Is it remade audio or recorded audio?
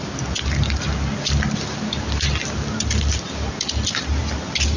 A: recorded